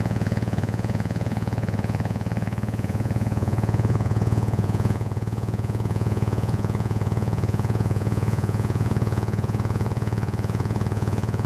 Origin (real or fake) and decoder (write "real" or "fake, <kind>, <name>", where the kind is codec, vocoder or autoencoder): fake, vocoder, Vocos